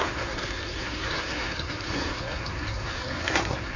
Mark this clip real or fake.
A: fake